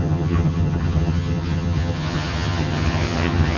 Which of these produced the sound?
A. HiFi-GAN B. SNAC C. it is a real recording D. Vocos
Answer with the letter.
A